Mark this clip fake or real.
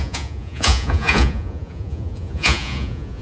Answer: fake